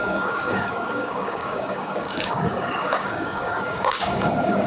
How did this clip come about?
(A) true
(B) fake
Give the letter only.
B